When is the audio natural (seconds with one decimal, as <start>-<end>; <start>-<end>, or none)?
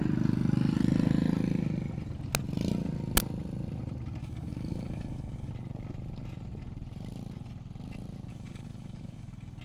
0.0-4.2; 5.5-8.3